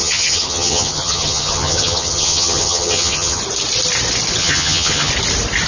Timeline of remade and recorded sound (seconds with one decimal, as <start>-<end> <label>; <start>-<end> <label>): 0.0-3.4 remade; 3.4-4.4 recorded; 4.4-5.1 remade; 5.1-5.7 recorded